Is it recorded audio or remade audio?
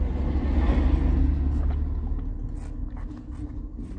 recorded